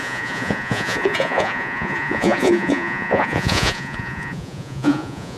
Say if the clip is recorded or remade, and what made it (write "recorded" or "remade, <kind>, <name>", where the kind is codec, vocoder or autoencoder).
remade, vocoder, Vocos